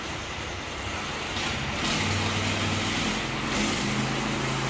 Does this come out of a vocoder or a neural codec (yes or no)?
no